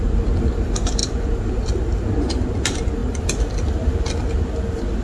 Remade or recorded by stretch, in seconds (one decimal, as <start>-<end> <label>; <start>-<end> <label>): 0.0-5.0 recorded

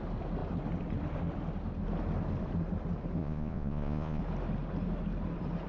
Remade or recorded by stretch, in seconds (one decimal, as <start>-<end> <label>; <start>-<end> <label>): 0.0-3.2 recorded; 3.2-4.2 remade; 4.2-5.7 recorded

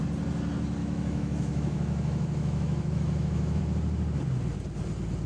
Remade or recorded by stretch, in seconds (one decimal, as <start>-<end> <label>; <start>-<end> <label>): 0.0-0.8 recorded; 0.8-3.6 remade; 3.6-5.3 recorded

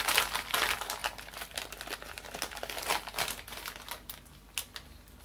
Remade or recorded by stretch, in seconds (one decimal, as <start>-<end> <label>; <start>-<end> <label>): 0.0-5.2 recorded

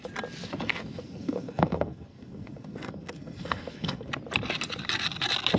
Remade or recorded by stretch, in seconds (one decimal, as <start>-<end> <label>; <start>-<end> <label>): 0.0-0.7 recorded; 0.7-4.1 remade; 4.1-5.6 recorded

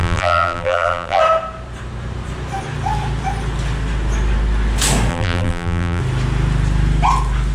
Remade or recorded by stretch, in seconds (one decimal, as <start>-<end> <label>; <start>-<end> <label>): 0.0-1.2 remade; 1.2-5.1 recorded; 5.1-6.0 remade; 6.0-7.5 recorded

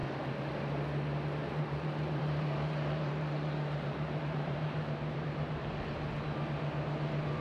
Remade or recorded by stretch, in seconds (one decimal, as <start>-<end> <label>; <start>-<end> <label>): 0.0-1.4 recorded; 1.4-5.8 remade; 5.8-7.4 recorded

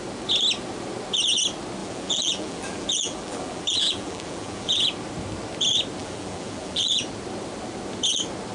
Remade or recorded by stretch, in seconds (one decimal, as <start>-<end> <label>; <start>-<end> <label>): 0.0-1.8 recorded; 1.8-4.8 remade; 4.8-6.0 recorded; 6.0-7.0 remade; 7.0-8.5 recorded